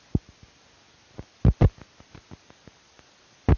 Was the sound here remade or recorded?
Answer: recorded